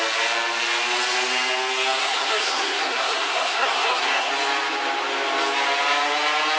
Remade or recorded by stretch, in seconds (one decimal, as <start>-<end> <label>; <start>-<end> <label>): 0.0-2.0 recorded; 2.0-4.3 remade; 4.3-6.6 recorded